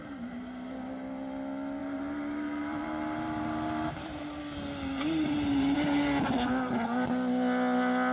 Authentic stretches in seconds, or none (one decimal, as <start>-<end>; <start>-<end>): 0.0-1.8; 4.4-8.1

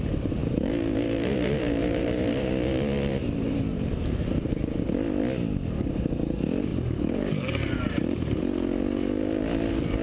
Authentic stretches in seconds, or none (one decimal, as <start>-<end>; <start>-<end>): 0.0-0.4; 2.5-3.2; 4.8-6.7; 8.4-10.0

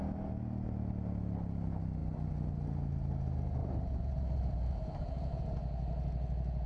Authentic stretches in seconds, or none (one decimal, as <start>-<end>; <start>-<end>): 0.0-3.6; 5.4-6.7